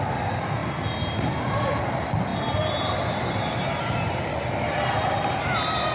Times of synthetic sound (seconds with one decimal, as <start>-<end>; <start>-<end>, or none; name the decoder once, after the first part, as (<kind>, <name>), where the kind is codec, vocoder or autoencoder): none